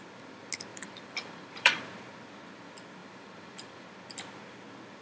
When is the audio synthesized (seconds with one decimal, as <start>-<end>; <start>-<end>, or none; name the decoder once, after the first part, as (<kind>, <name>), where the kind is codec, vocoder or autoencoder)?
0.7-1.8 (vocoder, BigVGAN v2); 3.0-3.9

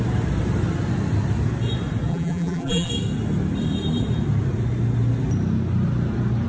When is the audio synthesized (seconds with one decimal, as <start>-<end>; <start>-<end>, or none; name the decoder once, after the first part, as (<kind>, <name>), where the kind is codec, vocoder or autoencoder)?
2.1-2.9 (vocoder, BigVGAN v2)

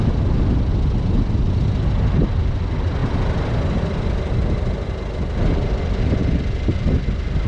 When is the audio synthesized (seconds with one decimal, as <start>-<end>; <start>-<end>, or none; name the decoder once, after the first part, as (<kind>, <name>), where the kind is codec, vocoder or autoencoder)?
none

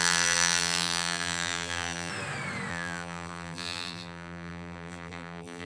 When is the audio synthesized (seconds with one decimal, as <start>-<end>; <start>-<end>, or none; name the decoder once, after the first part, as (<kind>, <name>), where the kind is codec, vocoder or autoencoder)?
0.0-2.1 (vocoder, BigVGAN v2); 2.7-5.7